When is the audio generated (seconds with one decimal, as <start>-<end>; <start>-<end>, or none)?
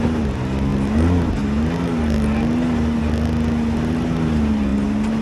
none